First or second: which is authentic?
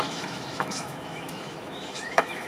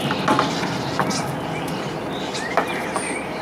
second